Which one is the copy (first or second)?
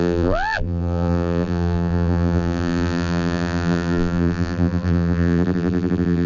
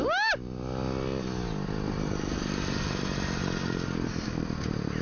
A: first